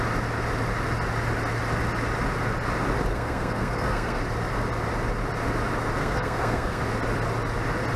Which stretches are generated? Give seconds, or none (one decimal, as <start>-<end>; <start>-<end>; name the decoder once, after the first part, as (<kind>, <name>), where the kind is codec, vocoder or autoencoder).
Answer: 3.1-4.2 (codec, SNAC); 6.0-6.8